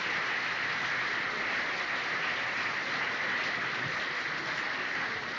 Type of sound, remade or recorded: recorded